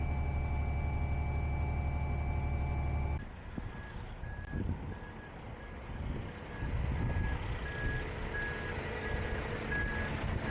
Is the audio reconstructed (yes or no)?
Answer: no